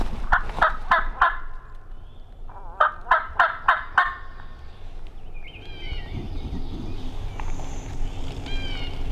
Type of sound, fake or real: real